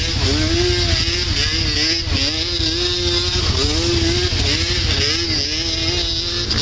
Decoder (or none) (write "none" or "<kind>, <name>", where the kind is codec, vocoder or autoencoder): none